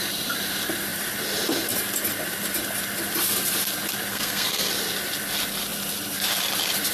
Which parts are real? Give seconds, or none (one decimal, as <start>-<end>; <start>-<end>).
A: 0.0-4.1; 4.7-6.9